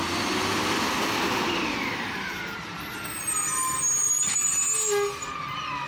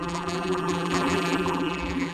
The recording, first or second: first